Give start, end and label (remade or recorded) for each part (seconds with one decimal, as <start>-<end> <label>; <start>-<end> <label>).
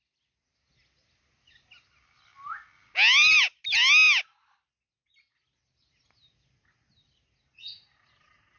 0.0-8.6 recorded